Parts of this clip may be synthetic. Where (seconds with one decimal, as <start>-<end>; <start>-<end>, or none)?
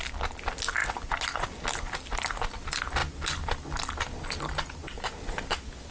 none